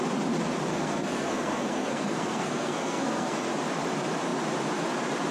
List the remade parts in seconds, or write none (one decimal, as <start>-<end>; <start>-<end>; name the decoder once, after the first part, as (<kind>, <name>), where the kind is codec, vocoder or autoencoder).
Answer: 0.7-3.5 (codec, SNAC)